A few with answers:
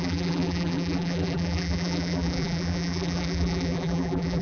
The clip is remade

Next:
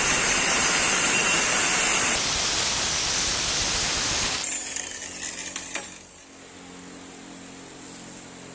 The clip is recorded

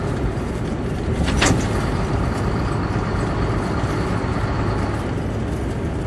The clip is recorded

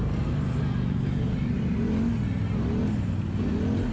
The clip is recorded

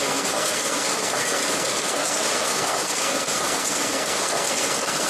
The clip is remade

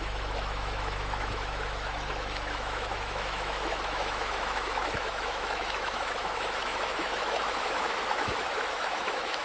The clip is remade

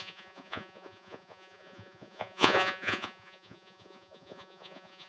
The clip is remade